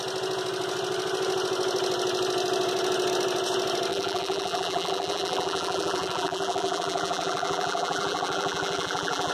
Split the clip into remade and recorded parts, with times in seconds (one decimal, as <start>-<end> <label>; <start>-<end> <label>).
0.0-3.9 recorded; 3.9-9.3 remade